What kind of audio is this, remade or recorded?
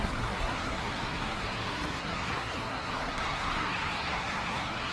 remade